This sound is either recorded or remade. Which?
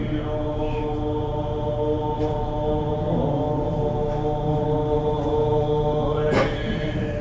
recorded